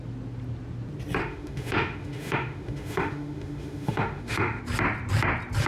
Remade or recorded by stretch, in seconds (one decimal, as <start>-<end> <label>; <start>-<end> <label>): 0.0-1.2 recorded; 1.2-4.6 remade; 4.6-5.7 recorded